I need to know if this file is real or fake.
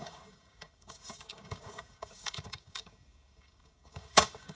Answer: fake